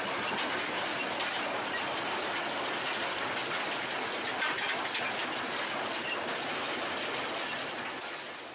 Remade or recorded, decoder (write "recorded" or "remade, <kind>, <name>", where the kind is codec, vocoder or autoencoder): recorded